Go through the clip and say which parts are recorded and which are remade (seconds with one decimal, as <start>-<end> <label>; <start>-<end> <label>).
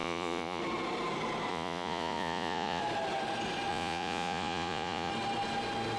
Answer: 0.0-0.6 remade; 0.6-1.5 recorded; 1.5-2.8 remade; 2.8-3.7 recorded; 3.7-5.1 remade; 5.1-6.0 recorded